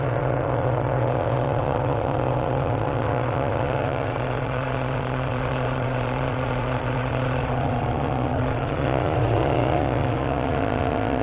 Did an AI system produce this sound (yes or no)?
yes